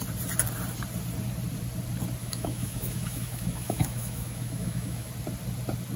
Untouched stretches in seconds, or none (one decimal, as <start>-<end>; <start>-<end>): 0.0-2.2; 5.1-6.0